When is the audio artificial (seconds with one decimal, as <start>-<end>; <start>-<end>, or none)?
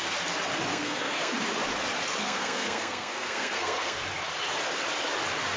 0.7-1.3; 2.2-4.0